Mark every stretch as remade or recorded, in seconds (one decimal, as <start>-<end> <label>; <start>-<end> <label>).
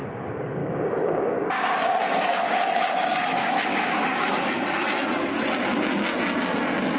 0.0-0.6 recorded; 0.6-4.5 remade; 4.5-7.0 recorded